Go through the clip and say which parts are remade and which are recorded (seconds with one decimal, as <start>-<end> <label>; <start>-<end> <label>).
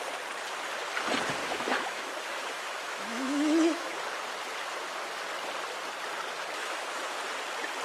0.0-1.4 recorded; 1.4-3.9 remade; 3.9-6.6 recorded; 6.6-7.2 remade; 7.2-7.8 recorded